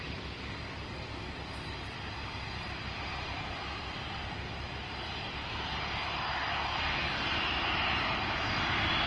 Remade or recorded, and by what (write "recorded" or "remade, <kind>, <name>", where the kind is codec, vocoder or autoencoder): recorded